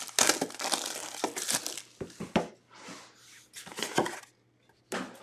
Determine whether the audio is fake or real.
real